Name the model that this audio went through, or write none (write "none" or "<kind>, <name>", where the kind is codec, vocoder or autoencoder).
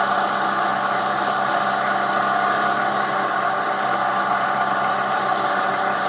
none